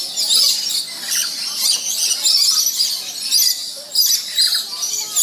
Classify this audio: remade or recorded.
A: recorded